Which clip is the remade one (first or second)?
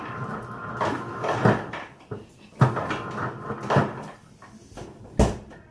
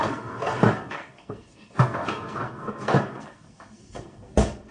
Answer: second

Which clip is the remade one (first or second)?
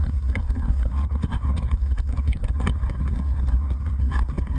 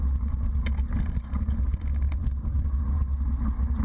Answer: first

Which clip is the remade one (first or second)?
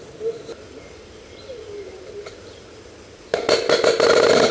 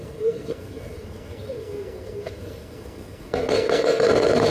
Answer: second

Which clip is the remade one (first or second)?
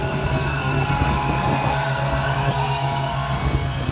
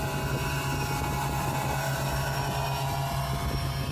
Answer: first